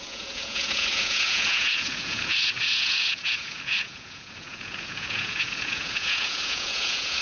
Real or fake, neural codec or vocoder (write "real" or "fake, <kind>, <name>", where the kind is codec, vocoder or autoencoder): fake, vocoder, Vocos